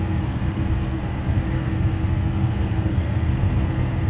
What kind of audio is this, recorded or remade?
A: remade